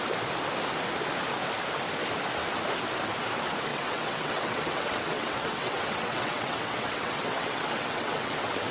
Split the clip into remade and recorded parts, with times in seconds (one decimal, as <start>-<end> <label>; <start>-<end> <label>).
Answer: 0.0-3.7 recorded; 3.7-8.7 remade